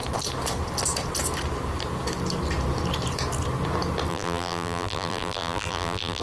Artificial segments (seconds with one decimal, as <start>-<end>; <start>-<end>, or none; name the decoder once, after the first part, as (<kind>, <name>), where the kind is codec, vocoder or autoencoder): 4.1-6.2 (vocoder, BigVGAN v2)